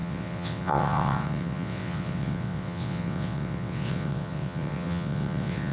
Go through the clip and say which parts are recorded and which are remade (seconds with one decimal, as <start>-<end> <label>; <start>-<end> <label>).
0.0-5.7 remade